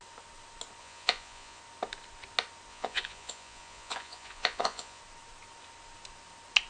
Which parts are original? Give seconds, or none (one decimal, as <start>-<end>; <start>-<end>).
0.0-0.8; 1.6-2.7; 5.0-6.7